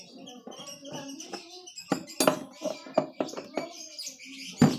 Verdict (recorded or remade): recorded